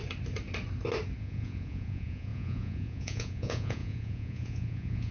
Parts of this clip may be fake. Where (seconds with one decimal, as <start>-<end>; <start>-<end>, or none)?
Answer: 1.2-5.1